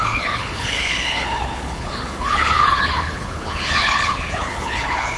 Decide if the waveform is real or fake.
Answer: fake